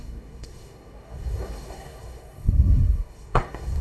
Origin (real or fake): fake